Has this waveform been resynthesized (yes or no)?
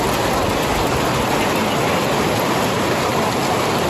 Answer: no